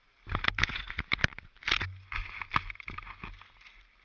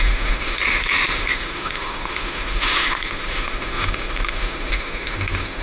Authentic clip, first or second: first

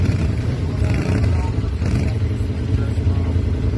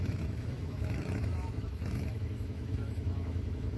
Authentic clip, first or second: first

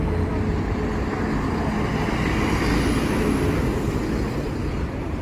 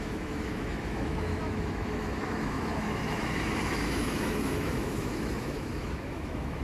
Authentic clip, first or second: first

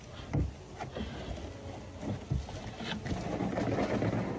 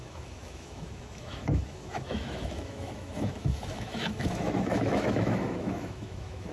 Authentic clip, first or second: first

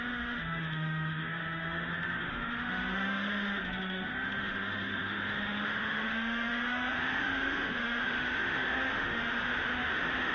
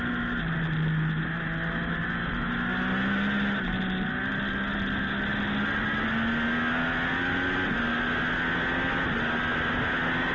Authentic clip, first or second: second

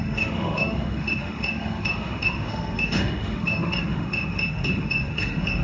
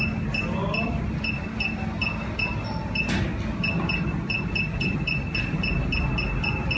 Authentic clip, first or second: second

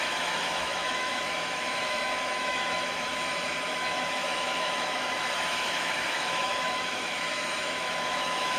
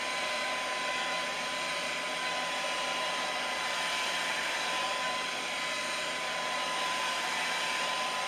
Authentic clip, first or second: second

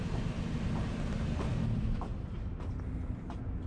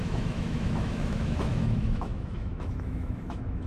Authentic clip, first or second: first